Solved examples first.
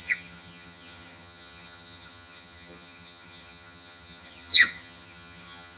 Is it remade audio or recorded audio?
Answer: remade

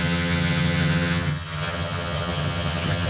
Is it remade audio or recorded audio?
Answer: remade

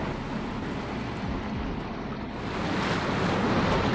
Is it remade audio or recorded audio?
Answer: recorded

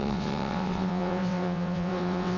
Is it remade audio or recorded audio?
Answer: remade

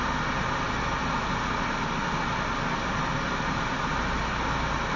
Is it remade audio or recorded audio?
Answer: recorded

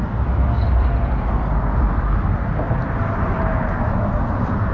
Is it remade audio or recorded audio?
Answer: recorded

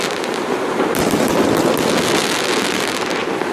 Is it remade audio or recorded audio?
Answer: recorded